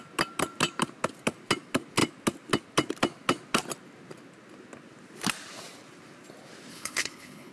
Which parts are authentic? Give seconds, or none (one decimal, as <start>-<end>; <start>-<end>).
0.0-6.7